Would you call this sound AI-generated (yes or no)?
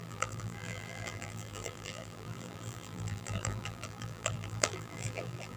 yes